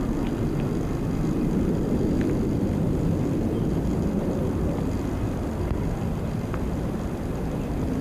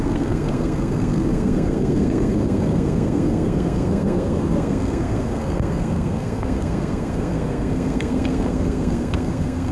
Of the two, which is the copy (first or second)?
second